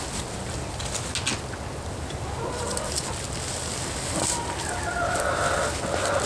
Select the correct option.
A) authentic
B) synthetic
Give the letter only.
A